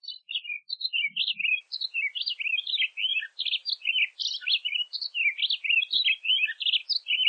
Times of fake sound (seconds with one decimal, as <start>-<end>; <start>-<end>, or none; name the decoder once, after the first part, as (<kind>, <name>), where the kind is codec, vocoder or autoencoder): none